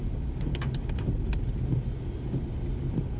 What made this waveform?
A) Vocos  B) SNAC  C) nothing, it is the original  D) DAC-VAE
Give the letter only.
C